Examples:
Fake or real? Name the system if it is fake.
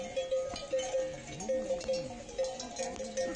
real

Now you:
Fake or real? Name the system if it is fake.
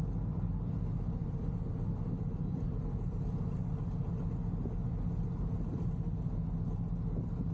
real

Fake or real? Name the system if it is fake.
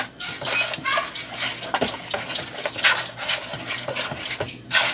real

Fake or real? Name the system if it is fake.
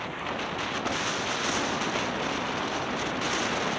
real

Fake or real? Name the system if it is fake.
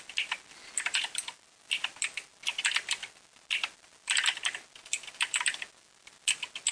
real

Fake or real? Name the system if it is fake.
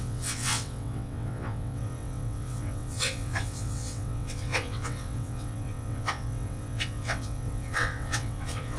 fake, vocoder, WaveNeXt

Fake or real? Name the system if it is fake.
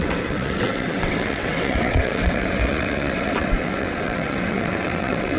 fake, vocoder, WaveNeXt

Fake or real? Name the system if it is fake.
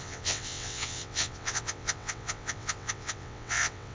fake, vocoder, WaveNeXt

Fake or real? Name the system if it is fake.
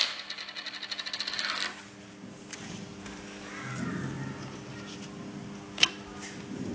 real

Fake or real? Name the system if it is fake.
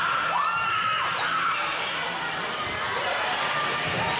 real